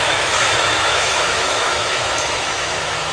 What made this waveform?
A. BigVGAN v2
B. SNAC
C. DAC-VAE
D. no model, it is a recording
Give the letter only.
C